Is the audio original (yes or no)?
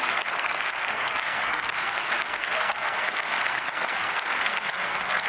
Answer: no